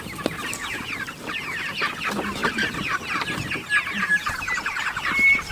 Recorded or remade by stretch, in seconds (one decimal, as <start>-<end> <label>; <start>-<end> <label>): 0.0-0.5 recorded; 0.5-1.9 remade; 1.9-2.4 recorded; 2.4-3.2 remade; 3.2-4.0 recorded; 4.0-5.1 remade; 5.1-5.5 recorded